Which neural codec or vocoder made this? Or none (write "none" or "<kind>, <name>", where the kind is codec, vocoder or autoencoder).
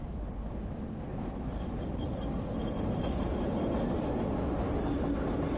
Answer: none